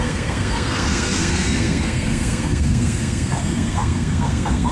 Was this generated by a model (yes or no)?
yes